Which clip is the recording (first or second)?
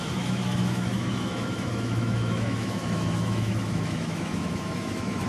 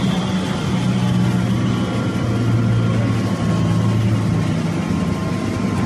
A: second